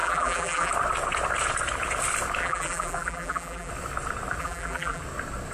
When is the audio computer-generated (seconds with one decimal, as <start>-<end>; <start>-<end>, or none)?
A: 0.0-0.7; 2.4-3.7; 4.4-5.0